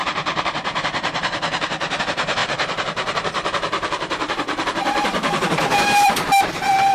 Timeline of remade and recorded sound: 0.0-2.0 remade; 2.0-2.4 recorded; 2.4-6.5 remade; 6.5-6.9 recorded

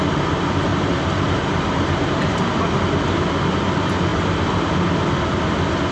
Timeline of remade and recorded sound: 0.0-0.7 recorded; 0.7-2.5 remade; 2.5-4.1 recorded; 4.1-4.9 remade; 4.9-5.9 recorded